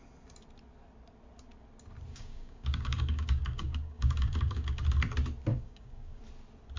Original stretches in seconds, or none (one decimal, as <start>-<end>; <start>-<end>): 0.0-2.1; 4.8-5.5; 6.2-6.8